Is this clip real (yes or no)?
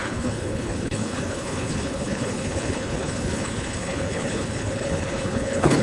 no